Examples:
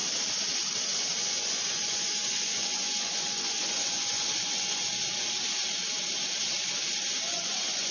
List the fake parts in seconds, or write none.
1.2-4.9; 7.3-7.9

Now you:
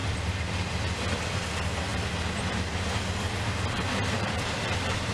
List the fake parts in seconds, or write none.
0.0-1.2; 1.9-5.1

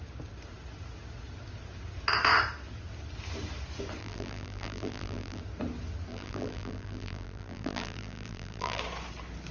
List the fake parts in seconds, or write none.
4.0-5.4; 6.1-8.8

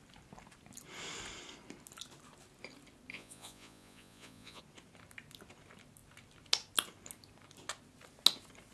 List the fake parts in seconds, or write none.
3.1-4.6

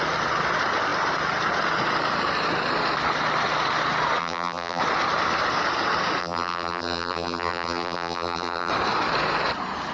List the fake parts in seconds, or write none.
4.2-4.8; 6.2-8.7

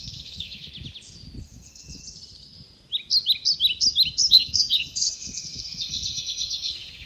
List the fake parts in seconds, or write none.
0.0-0.7; 1.4-2.0; 4.3-7.1

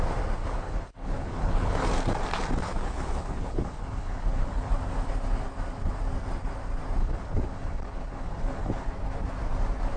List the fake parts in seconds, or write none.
0.4-1.9; 2.6-4.7; 7.0-8.9

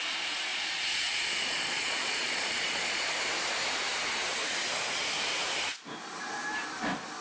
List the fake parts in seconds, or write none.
0.5-3.1